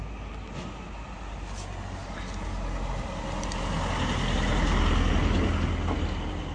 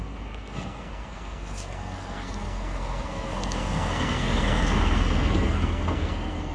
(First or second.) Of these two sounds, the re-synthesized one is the second